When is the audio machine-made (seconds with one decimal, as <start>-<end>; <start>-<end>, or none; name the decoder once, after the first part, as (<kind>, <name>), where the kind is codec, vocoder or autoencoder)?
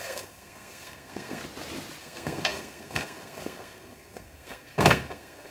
0.0-1.4 (codec, SNAC); 2.0-5.5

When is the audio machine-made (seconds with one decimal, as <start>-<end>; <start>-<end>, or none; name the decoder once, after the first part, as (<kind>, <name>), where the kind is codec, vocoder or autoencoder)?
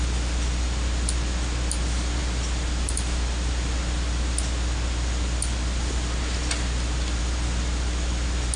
none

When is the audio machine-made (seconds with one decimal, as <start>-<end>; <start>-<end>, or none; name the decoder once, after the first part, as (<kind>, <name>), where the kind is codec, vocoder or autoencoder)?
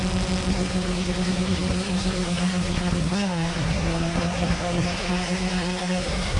0.5-6.4 (codec, SNAC)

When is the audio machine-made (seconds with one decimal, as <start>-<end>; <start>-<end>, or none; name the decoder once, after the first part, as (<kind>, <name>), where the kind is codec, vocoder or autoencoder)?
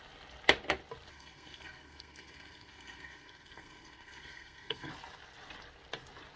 1.1-4.9 (codec, SNAC)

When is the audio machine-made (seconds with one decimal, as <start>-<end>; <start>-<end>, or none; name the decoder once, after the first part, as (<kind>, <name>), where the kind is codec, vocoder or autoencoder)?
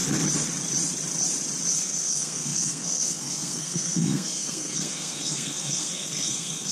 1.7-6.7 (codec, SNAC)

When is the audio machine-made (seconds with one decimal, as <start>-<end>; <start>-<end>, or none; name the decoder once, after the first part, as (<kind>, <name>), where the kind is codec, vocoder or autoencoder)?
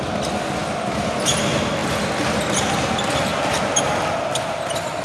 none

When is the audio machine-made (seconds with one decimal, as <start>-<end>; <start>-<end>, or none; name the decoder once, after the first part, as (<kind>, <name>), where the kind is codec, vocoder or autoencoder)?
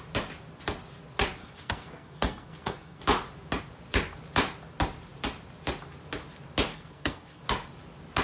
1.4-3.0 (codec, SNAC); 6.7-7.4